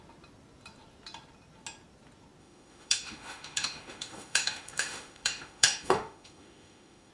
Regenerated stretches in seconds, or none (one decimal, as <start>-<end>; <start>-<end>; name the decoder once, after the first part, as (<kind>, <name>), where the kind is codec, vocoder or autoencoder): 2.4-7.1 (autoencoder, DAC-VAE)